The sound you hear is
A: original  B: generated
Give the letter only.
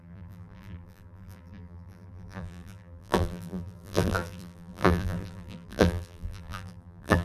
B